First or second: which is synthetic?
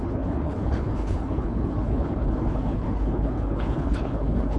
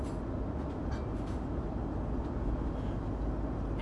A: first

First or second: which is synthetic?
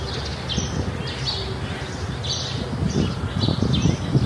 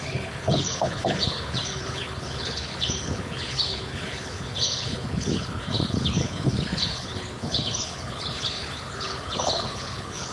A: second